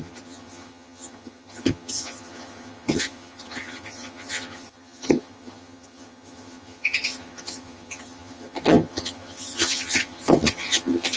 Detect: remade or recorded remade